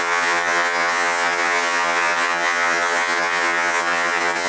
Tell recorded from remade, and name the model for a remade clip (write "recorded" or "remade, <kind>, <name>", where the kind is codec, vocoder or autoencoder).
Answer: remade, vocoder, HiFi-GAN